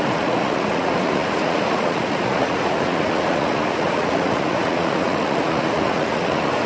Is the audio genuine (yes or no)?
no